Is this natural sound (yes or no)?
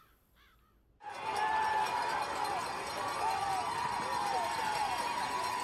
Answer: yes